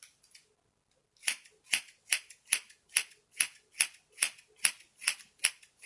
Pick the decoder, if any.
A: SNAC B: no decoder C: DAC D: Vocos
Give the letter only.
B